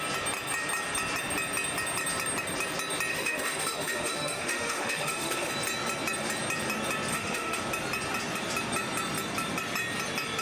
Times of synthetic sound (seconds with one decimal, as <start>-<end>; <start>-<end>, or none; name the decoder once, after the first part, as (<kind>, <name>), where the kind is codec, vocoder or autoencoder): 3.1-5.5 (autoencoder, DAC-VAE); 7.1-7.6